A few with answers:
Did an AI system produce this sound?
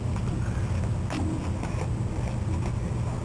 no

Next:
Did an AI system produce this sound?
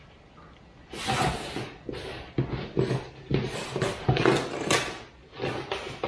no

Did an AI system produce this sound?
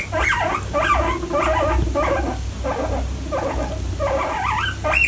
no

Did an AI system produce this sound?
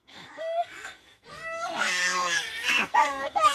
yes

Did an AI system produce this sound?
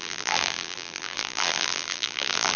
yes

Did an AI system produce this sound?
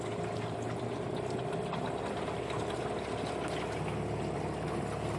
no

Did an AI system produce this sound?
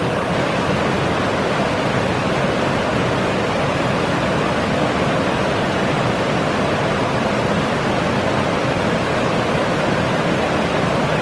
no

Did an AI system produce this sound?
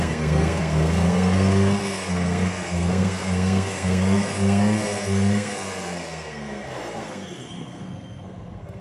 yes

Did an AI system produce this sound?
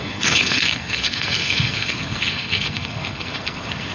yes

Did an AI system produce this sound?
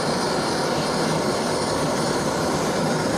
yes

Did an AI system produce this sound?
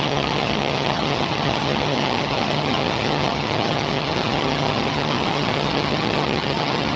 yes